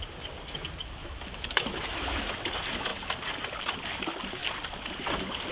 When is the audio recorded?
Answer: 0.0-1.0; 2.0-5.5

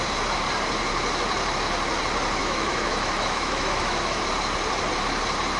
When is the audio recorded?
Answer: 0.0-2.4; 4.2-5.6

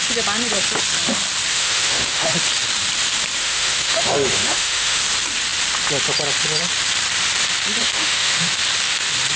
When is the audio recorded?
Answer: 0.0-1.5; 2.3-3.4; 5.0-7.8; 8.5-9.4

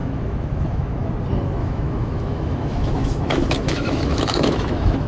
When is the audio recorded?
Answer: 1.1-1.6

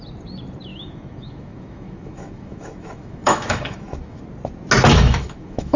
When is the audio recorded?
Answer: 0.0-0.7; 4.2-4.9

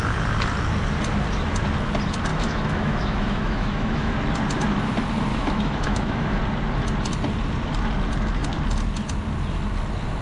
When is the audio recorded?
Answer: 0.0-2.3; 4.1-5.3; 6.4-10.2

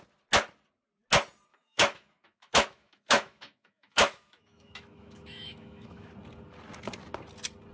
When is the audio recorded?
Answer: 0.0-1.5; 6.1-7.7

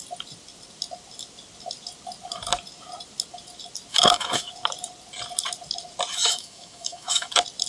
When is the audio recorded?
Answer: 0.0-3.9; 4.5-6.1; 7.3-7.7